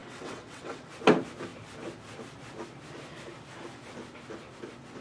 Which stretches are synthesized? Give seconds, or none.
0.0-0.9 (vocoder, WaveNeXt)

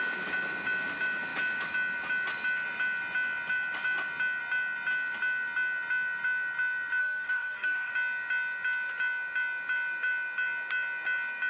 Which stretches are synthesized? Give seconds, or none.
7.0-7.9 (autoencoder, DAC-VAE)

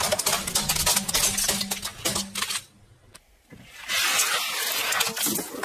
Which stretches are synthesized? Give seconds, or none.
none

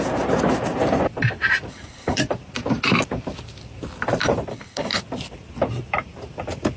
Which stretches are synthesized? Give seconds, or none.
1.7-2.2 (codec, HILCodec); 4.5-5.0

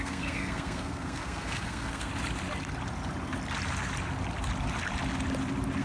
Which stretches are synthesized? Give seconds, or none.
0.0-2.1 (codec, SNAC)

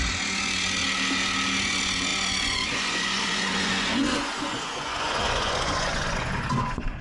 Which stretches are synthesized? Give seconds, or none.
0.0-0.8 (vocoder, Vocos); 1.6-7.0

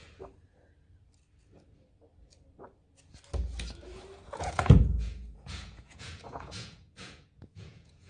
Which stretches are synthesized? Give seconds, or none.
4.3-8.1 (vocoder, Vocos)

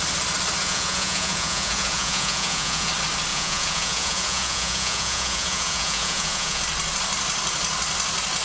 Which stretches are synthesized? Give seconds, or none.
0.6-2.9 (vocoder, Vocos); 3.3-6.6